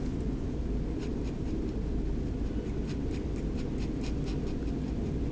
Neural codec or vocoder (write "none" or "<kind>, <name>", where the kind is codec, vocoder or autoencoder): none